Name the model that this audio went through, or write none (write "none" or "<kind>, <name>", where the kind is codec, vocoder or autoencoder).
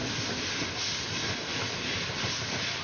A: none